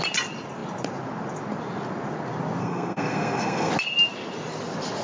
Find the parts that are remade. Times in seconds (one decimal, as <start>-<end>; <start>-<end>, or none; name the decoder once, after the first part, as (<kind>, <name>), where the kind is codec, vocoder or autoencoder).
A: 2.6-3.7 (codec, SNAC)